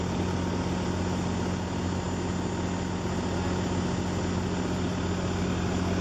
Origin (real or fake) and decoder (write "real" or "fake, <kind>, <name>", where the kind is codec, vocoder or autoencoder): real